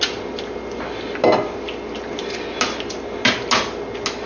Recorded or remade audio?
recorded